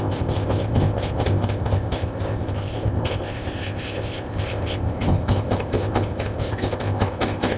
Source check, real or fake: fake